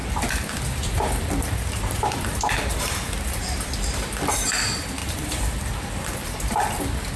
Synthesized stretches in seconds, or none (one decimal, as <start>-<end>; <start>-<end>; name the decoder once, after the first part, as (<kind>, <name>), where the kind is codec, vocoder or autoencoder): 0.0-4.3 (vocoder, BigVGAN v2); 5.0-6.8